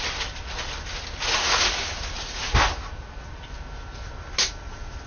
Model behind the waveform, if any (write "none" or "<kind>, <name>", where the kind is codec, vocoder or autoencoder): none